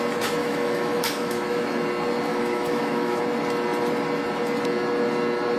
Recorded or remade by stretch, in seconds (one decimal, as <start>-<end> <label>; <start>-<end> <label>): 0.0-0.4 recorded; 0.4-1.6 remade; 1.6-2.3 recorded; 2.3-3.2 remade; 3.2-5.6 recorded